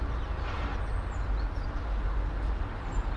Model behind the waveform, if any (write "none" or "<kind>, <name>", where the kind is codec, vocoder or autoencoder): none